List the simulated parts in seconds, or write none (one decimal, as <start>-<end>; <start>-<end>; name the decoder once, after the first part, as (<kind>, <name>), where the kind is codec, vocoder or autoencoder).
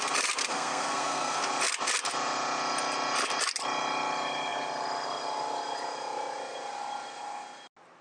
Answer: 0.4-1.5 (codec, SNAC)